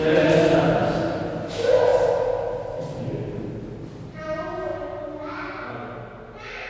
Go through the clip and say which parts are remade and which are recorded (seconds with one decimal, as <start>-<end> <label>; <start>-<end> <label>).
0.0-6.7 recorded